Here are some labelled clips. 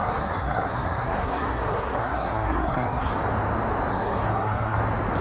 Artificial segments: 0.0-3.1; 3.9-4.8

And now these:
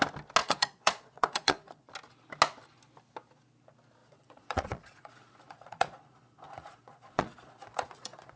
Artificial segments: 0.4-1.9; 4.0-8.4